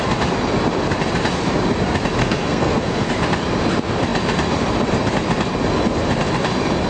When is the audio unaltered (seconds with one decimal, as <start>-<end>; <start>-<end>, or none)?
0.0-2.2; 3.1-6.9